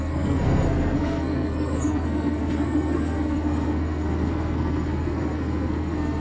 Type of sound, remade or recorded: remade